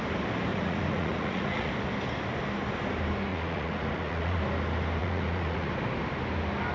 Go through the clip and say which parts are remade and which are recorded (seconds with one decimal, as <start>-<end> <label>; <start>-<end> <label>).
0.0-0.5 recorded; 0.5-1.7 remade; 1.7-3.3 recorded; 3.3-4.4 remade; 4.4-5.0 recorded; 5.0-5.7 remade; 5.7-6.7 recorded